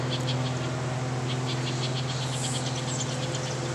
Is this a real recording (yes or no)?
yes